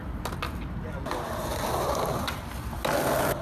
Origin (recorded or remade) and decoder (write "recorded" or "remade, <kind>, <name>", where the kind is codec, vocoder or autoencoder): recorded